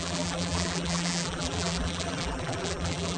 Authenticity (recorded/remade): remade